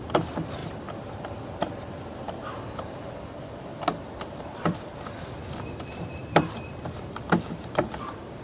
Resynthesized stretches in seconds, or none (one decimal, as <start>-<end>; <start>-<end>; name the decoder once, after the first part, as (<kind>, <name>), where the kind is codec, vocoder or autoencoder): 0.0-3.7 (vocoder, BigVGAN v2); 4.3-8.4